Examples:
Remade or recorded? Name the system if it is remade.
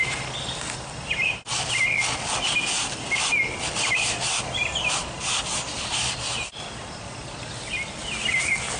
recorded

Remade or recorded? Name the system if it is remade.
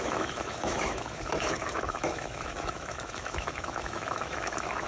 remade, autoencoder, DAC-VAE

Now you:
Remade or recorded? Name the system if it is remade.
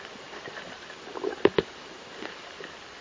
recorded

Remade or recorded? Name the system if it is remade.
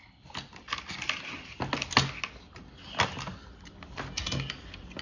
recorded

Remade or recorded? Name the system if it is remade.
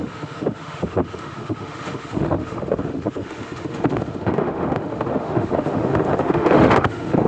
remade, autoencoder, DAC-VAE